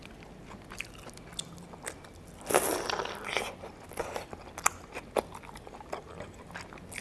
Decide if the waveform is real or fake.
real